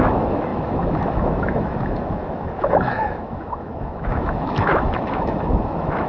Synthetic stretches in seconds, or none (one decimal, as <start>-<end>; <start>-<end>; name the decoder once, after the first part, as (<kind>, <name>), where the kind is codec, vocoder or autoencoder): 0.0-6.1 (autoencoder, DAC-VAE)